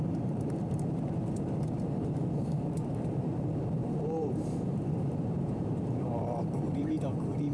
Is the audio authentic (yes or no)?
no